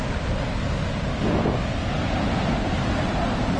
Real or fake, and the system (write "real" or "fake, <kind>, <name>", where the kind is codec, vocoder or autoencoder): real